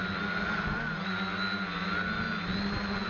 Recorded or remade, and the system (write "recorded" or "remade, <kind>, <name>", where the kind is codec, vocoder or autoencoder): recorded